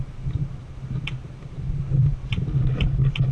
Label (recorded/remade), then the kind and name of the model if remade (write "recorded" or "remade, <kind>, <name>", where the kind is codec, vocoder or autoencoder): recorded